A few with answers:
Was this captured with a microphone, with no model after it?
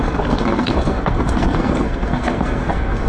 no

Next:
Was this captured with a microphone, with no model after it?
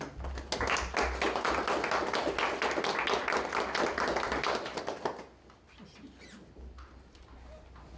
yes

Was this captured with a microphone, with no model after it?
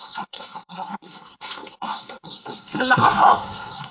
no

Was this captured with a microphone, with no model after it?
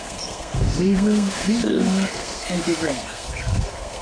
no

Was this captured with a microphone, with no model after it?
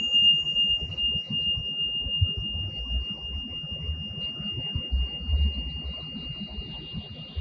yes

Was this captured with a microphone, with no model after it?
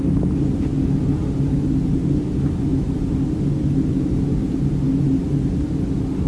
yes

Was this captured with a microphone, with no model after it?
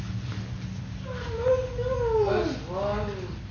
yes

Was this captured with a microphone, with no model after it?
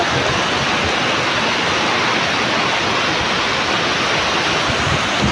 yes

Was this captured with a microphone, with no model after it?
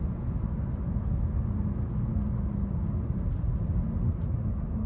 yes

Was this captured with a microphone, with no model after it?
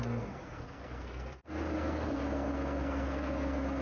no